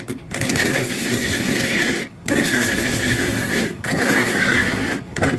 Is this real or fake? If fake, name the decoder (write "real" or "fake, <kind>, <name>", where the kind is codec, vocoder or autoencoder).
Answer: fake, codec, SNAC